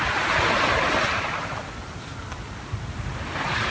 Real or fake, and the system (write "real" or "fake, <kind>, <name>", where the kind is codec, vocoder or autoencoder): real